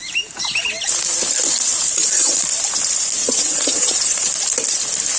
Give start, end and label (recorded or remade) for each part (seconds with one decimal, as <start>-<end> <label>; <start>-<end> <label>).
0.0-3.2 recorded; 3.2-4.3 remade; 4.3-5.2 recorded